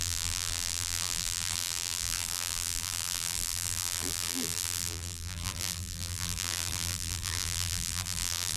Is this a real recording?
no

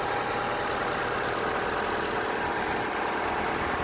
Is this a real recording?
yes